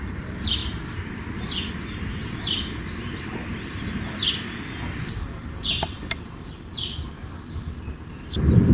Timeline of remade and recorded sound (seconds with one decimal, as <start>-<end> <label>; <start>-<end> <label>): 0.0-8.7 recorded

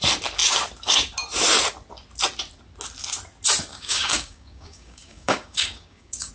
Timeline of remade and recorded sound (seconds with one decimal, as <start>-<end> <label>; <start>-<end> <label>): 0.0-3.7 recorded; 3.7-6.3 remade

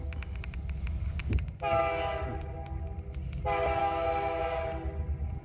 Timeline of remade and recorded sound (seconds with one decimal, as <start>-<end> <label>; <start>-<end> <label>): 0.0-1.2 recorded; 1.2-1.8 remade; 1.8-3.8 recorded; 3.8-4.4 remade; 4.4-5.4 recorded